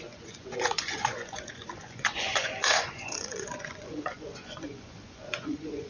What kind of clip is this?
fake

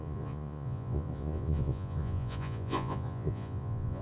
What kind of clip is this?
fake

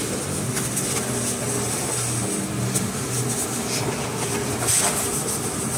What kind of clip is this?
real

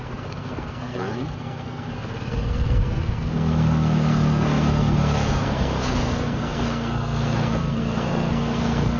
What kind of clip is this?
fake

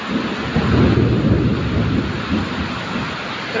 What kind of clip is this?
real